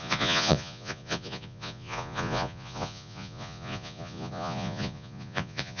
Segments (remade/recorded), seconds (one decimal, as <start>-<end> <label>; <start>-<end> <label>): 0.0-5.8 remade